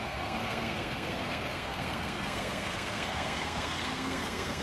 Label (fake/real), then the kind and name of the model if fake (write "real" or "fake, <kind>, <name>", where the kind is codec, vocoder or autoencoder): fake, codec, SNAC